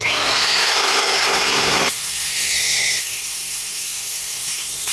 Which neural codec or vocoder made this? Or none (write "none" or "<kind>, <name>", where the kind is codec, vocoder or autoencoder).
codec, SNAC